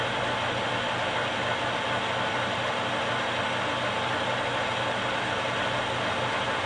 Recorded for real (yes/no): yes